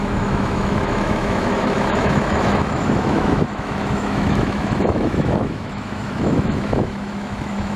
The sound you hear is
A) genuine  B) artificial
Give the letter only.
B